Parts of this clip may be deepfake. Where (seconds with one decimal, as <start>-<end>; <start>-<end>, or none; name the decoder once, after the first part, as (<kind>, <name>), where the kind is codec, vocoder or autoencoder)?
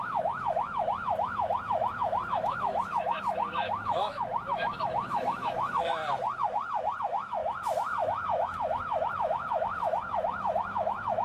0.0-6.0 (autoencoder, DAC-VAE); 7.0-11.2